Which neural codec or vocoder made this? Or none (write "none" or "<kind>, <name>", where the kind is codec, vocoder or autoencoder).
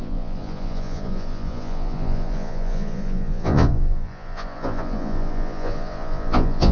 vocoder, Vocos